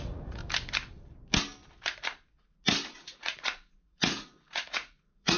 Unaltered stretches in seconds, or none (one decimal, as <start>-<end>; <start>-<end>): 0.4-2.9